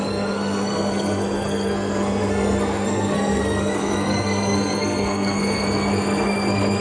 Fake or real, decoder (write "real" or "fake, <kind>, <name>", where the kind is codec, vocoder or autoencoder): fake, codec, SNAC